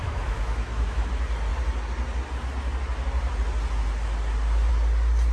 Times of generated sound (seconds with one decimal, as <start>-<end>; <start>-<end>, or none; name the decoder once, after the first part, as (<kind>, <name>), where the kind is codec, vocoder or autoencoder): 0.0-1.1 (autoencoder, DAC-VAE)